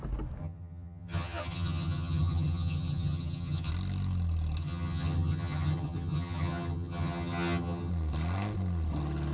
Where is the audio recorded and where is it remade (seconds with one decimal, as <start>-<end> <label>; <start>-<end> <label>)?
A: 0.0-0.4 recorded; 0.4-3.7 remade; 3.7-4.6 recorded; 4.6-7.9 remade; 7.9-9.3 recorded